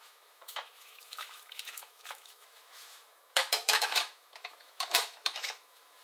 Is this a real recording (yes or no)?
no